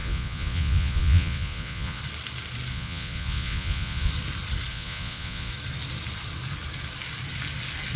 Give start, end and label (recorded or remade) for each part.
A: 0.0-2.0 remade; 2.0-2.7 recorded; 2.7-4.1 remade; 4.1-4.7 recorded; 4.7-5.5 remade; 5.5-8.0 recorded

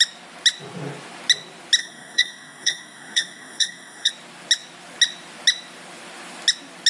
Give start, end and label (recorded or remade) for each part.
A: 0.0-1.8 recorded; 1.8-4.1 remade; 4.1-6.9 recorded

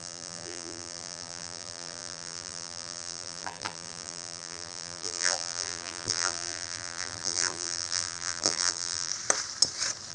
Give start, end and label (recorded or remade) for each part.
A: 0.0-9.1 remade; 9.1-10.1 recorded

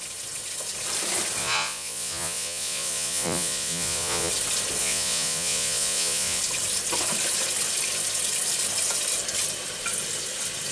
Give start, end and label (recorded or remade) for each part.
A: 0.0-1.4 recorded; 1.4-4.3 remade; 4.3-4.8 recorded; 4.8-6.4 remade; 6.4-10.7 recorded

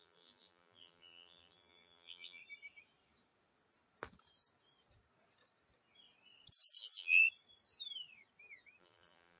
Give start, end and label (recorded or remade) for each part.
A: 0.0-2.4 remade; 2.4-6.8 recorded; 6.8-7.2 remade; 7.2-8.8 recorded; 8.8-9.4 remade

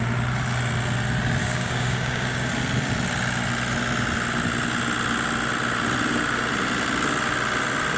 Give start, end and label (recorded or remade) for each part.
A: 0.0-1.4 recorded; 1.4-2.5 remade; 2.5-8.0 recorded